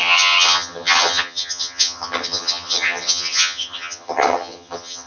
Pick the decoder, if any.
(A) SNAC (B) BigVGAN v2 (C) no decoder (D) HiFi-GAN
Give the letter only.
D